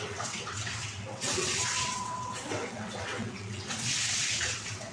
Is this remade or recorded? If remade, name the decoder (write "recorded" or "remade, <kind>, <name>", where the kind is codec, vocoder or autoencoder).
remade, vocoder, WaveNeXt